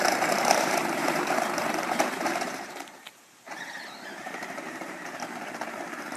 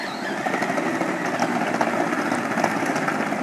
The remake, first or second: first